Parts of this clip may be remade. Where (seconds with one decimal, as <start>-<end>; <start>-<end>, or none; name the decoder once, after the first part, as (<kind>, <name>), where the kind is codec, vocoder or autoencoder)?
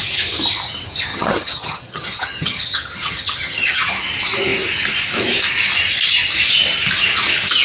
1.1-3.9 (vocoder, HiFi-GAN)